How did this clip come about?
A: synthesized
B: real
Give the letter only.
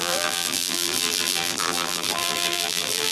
A